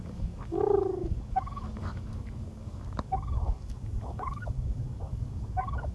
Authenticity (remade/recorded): remade